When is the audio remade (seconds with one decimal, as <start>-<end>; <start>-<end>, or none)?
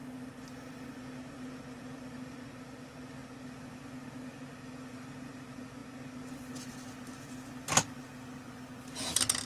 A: none